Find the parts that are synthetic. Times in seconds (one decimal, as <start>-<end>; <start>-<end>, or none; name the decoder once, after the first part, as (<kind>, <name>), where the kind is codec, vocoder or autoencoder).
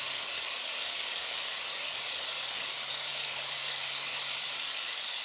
0.0-5.2 (codec, DAC)